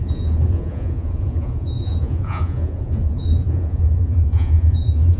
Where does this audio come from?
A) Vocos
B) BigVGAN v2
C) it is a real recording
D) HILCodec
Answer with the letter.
A